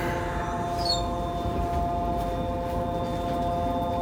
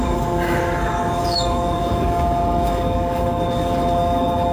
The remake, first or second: second